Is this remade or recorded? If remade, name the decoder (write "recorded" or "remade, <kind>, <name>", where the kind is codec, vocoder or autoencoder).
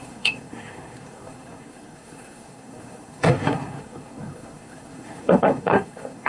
remade, codec, SNAC